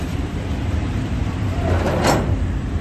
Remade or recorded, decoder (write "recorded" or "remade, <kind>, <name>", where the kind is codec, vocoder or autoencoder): remade, vocoder, BigVGAN v2